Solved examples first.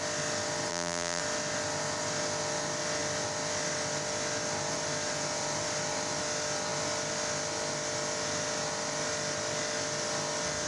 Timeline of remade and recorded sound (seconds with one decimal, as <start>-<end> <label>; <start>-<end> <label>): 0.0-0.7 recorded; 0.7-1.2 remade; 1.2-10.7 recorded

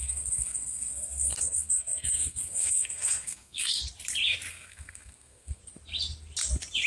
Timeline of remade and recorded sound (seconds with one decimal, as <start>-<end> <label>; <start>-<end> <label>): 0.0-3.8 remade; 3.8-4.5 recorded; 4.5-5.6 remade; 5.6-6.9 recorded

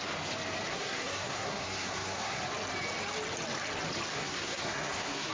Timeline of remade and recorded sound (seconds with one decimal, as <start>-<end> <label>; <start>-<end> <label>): 0.0-0.7 recorded; 0.7-2.4 remade; 2.4-4.1 recorded; 4.1-5.3 remade